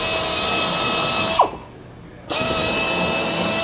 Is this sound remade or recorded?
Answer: recorded